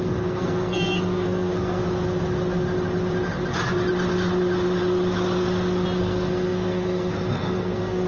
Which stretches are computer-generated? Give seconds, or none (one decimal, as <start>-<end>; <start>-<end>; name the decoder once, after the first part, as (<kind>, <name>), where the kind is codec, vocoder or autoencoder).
0.0-1.8 (codec, SNAC); 6.0-8.1